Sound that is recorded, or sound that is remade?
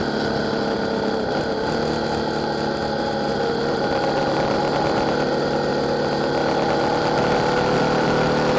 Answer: recorded